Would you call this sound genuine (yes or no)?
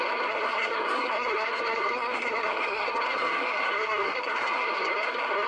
no